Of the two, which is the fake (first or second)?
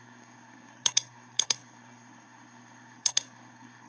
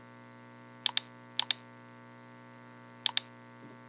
first